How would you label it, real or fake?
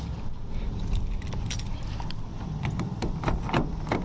real